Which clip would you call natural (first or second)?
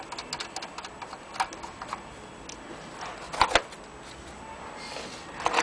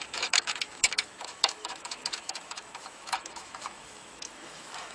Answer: first